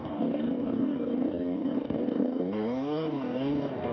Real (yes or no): no